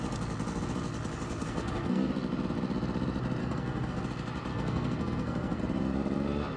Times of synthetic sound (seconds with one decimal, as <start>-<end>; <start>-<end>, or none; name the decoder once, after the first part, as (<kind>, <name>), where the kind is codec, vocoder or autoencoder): 1.4-2.1 (codec, SNAC); 3.4-4.0; 4.5-5.6